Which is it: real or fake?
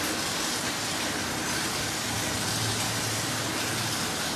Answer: real